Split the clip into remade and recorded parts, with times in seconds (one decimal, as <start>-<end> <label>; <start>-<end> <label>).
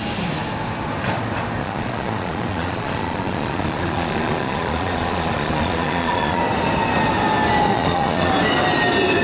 0.0-1.6 recorded; 1.6-6.4 remade; 6.4-7.7 recorded; 7.7-8.3 remade; 8.3-9.2 recorded